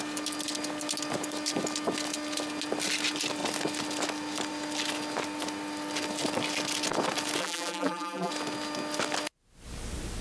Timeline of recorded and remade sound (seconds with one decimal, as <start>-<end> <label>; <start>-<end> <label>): 0.0-7.4 recorded; 7.4-8.3 remade; 8.3-10.2 recorded